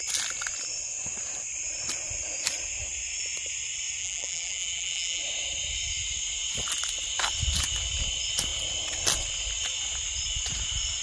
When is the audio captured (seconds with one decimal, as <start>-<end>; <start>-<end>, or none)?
0.0-4.0; 5.2-11.0